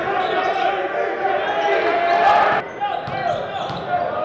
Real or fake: real